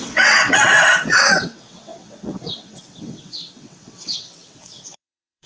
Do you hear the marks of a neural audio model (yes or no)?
yes